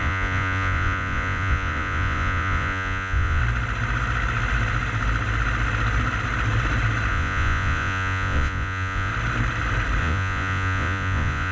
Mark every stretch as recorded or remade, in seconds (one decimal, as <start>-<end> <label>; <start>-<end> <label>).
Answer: 0.0-3.4 remade; 3.4-7.1 recorded; 7.1-9.1 remade; 9.1-10.0 recorded; 10.0-11.5 remade